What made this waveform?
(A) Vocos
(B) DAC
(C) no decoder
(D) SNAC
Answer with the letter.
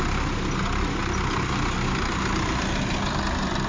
C